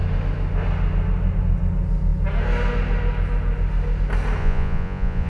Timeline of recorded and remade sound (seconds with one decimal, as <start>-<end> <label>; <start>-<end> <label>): 0.0-4.4 recorded; 4.4-5.3 remade